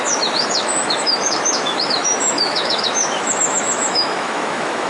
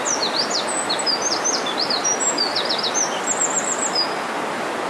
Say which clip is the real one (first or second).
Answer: second